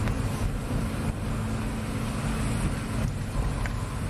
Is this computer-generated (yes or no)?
no